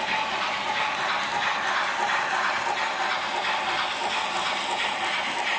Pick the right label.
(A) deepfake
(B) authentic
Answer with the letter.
B